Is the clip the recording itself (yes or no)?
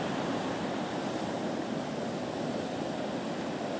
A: yes